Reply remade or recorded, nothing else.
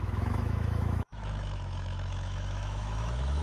remade